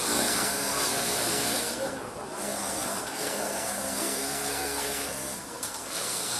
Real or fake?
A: fake